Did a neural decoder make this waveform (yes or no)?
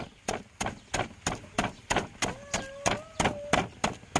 no